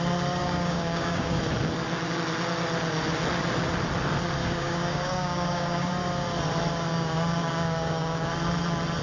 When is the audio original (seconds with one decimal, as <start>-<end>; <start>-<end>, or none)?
0.0-0.4; 1.4-4.4; 5.9-6.9; 8.3-9.0

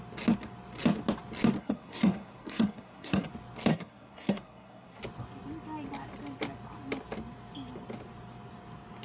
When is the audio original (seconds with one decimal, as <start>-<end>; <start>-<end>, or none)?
0.0-1.6; 3.3-3.7; 5.0-9.0

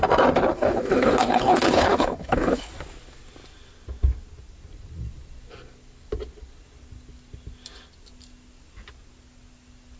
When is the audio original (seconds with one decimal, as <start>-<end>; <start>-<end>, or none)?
0.0-0.5; 2.7-10.0